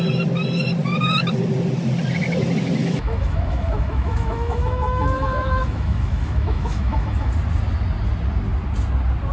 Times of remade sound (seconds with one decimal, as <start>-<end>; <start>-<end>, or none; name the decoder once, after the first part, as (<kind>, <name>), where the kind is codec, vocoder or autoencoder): 2.8-7.3 (autoencoder, DAC-VAE)